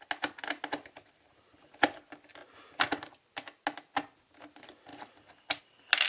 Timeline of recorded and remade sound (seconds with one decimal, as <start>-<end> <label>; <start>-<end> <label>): 0.0-6.1 recorded